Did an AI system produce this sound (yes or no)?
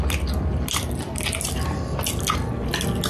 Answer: no